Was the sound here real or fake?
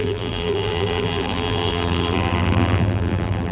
fake